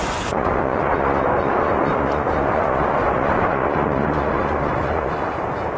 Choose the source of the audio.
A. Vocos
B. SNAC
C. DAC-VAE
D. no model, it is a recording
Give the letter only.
A